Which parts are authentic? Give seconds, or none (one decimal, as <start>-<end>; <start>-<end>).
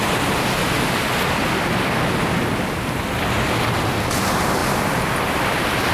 0.0-5.9